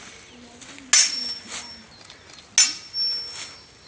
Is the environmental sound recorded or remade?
recorded